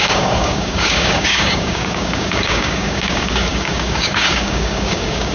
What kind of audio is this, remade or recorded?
remade